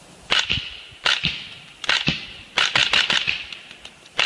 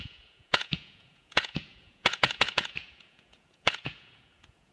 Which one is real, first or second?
first